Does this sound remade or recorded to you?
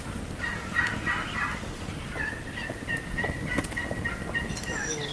recorded